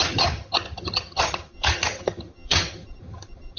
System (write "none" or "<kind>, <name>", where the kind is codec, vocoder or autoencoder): vocoder, HiFi-GAN